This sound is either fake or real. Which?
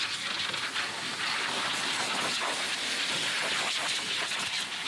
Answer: real